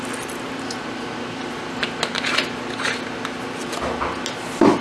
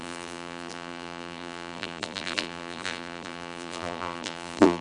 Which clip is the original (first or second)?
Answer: first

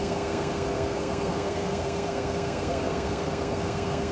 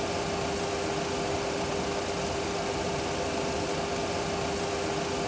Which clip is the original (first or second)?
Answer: second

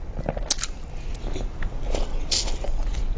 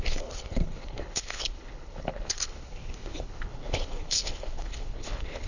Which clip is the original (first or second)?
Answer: first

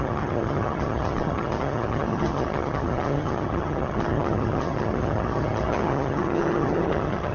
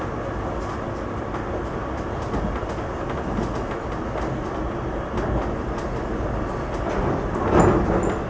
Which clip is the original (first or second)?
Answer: second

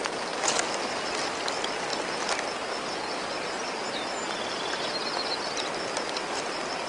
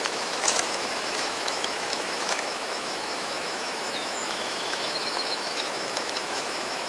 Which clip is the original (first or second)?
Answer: first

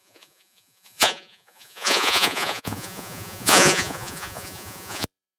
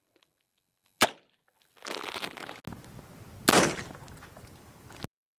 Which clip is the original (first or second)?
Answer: second